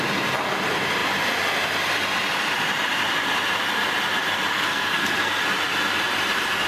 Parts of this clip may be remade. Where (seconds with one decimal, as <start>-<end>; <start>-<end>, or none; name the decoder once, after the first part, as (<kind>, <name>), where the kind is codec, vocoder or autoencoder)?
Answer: 4.5-5.4 (codec, SNAC)